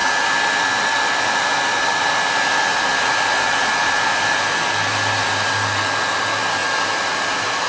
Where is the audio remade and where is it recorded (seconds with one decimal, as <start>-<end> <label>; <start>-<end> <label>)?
0.0-7.7 recorded